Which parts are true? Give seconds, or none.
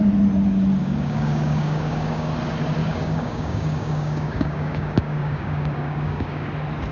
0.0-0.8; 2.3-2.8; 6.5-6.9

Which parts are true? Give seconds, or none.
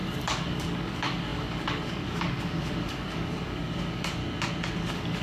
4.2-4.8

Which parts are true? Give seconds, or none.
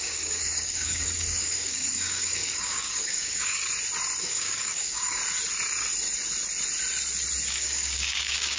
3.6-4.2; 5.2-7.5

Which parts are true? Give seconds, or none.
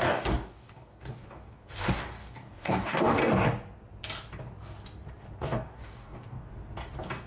3.2-5.4; 6.5-7.3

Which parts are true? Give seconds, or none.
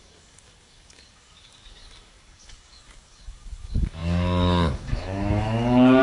none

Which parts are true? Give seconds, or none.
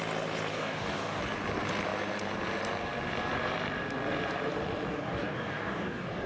0.0-0.5; 1.2-4.9